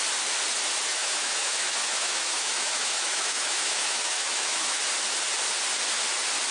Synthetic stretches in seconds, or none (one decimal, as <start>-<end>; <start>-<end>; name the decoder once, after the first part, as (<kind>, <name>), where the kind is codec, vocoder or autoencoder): 0.9-4.8 (autoencoder, DAC-VAE)